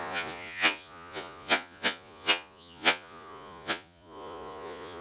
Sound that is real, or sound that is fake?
fake